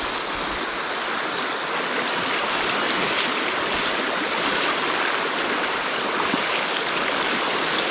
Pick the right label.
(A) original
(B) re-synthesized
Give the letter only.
A